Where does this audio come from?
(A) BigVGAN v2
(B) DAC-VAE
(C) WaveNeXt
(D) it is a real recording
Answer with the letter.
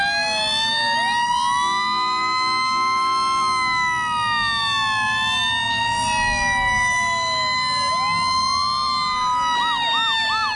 D